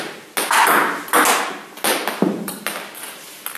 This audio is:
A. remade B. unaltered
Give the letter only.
B